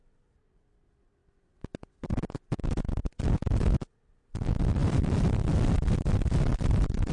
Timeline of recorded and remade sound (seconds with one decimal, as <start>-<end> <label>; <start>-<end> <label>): 0.0-1.2 recorded; 1.2-3.0 remade; 3.0-4.8 recorded; 4.8-5.7 remade; 5.7-6.5 recorded; 6.5-7.1 remade